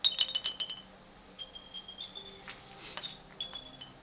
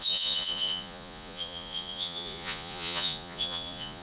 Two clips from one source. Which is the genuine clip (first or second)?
first